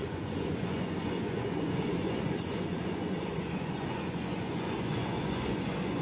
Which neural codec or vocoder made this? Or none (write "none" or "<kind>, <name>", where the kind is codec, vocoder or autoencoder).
vocoder, Vocos